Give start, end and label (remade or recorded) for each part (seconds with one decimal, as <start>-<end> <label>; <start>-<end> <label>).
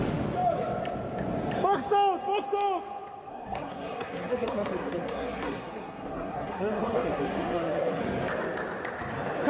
0.0-3.3 recorded; 3.3-8.0 remade; 8.0-9.5 recorded